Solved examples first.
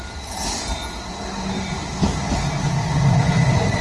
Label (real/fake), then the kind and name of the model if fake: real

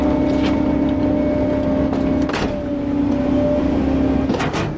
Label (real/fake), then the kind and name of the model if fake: real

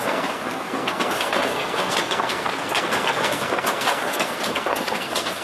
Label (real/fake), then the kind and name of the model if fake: fake, codec, SNAC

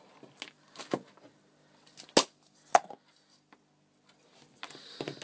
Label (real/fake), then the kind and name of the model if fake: real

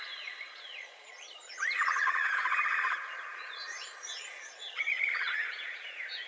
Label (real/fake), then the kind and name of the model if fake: fake, vocoder, Vocos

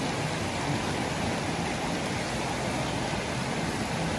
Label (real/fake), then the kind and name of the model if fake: real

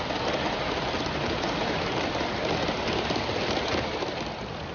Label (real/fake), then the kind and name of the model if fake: real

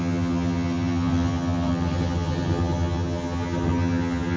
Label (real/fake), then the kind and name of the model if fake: fake, vocoder, HiFi-GAN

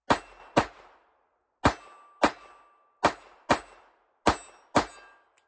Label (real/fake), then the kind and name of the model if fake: real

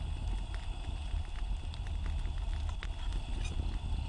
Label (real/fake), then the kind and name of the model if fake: real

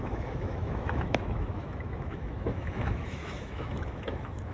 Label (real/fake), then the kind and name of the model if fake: fake, autoencoder, DAC-VAE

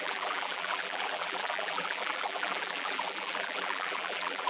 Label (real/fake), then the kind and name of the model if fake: fake, vocoder, BigVGAN v2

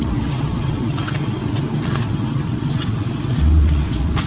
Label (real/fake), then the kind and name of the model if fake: fake, vocoder, WaveNeXt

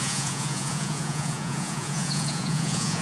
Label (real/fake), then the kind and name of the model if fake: fake, vocoder, Vocos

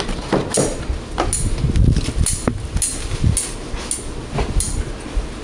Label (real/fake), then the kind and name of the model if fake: real